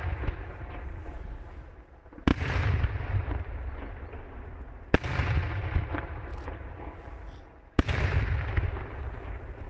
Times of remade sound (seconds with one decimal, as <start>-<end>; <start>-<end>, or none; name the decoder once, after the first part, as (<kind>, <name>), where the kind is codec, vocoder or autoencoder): none